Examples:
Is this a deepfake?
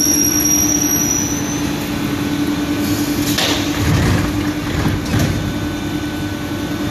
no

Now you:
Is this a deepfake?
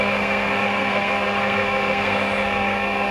yes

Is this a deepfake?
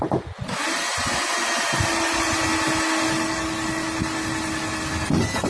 no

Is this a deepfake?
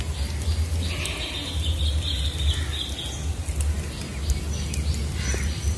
no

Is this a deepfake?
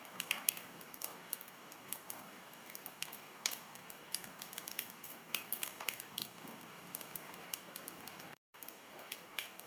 yes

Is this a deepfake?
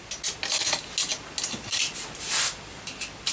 no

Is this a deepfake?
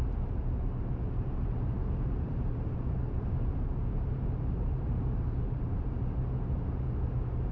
yes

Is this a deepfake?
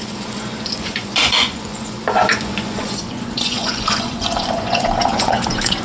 yes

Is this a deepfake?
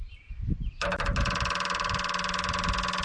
no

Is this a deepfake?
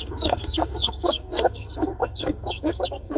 yes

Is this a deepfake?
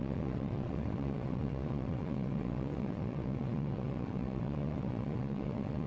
yes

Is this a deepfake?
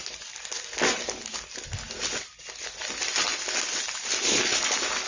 no